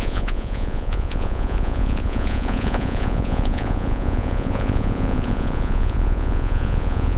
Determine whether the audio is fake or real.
fake